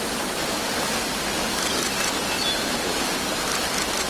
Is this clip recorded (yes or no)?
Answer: yes